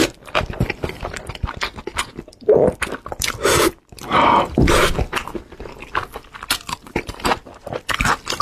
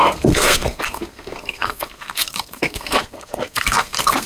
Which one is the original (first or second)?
first